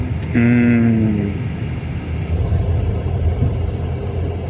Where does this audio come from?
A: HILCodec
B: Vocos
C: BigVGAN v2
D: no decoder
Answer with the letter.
D